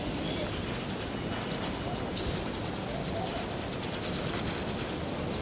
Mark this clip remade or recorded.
recorded